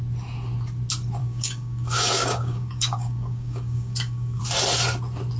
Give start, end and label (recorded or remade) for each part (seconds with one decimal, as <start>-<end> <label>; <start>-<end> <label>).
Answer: 0.0-1.2 recorded; 1.2-4.4 remade; 4.4-5.4 recorded